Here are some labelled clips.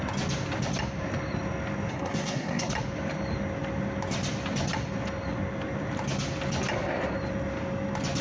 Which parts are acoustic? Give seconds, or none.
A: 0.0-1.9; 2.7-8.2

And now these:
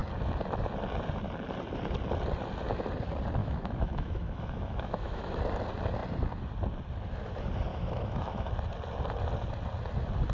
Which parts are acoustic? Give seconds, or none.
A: 0.0-3.4; 5.4-7.7; 8.5-10.3